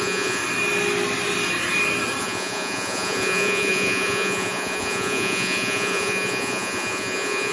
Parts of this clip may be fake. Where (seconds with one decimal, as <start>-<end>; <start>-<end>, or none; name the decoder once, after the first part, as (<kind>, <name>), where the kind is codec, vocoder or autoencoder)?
0.0-0.4 (vocoder, Vocos); 2.2-7.5